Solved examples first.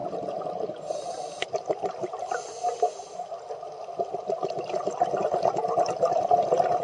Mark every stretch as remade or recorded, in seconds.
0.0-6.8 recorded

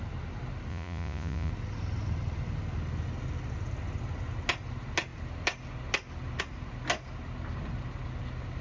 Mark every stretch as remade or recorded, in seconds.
0.0-0.7 recorded; 0.7-1.5 remade; 1.5-8.6 recorded

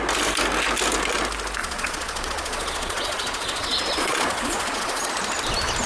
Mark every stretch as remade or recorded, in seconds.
0.0-1.6 recorded; 1.6-5.1 remade; 5.1-5.9 recorded

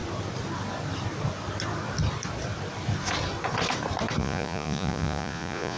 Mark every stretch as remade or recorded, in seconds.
0.0-4.2 recorded; 4.2-5.8 remade

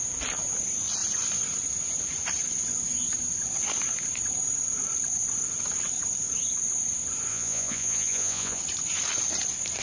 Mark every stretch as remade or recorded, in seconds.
0.0-7.3 recorded; 7.3-8.6 remade; 8.6-9.8 recorded

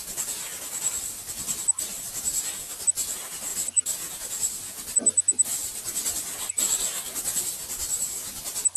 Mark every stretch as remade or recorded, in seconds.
0.0-8.8 recorded